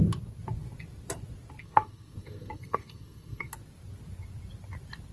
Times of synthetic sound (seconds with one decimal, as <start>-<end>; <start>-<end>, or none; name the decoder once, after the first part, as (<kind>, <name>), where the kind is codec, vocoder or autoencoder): 1.6-3.5 (codec, SNAC)